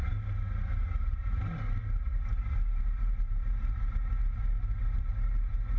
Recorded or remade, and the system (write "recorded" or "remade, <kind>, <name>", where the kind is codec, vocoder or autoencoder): recorded